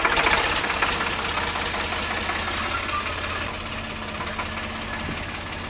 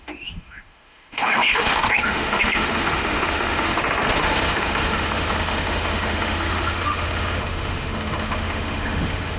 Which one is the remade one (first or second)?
second